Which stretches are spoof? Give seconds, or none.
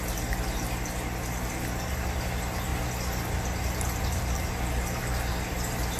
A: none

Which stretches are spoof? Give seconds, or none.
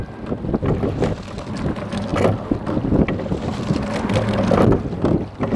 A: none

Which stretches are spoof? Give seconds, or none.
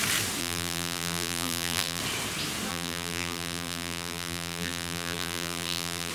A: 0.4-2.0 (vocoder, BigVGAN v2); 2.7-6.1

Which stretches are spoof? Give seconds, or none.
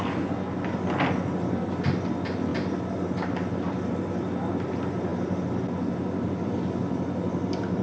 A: none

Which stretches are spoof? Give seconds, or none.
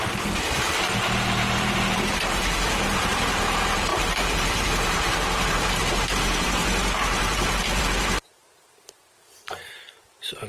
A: 0.0-10.5 (vocoder, BigVGAN v2)